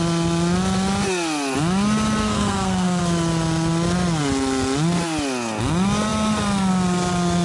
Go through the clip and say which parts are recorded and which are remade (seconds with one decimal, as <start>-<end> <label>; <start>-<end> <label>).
0.0-2.2 recorded; 2.2-3.0 remade; 3.0-7.4 recorded